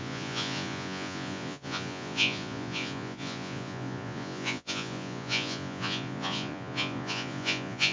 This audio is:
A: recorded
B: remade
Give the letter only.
B